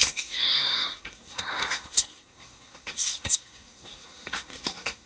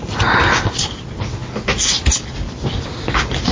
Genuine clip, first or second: second